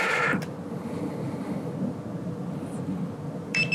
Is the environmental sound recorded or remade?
recorded